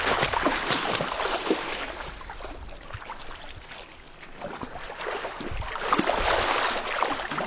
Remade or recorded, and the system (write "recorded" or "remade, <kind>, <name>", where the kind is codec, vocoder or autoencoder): recorded